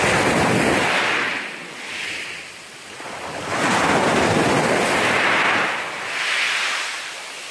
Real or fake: real